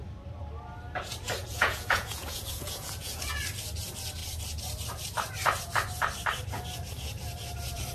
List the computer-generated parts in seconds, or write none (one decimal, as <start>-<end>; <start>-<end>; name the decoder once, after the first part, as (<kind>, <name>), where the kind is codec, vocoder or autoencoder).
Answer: 1.4-3.4 (vocoder, Vocos)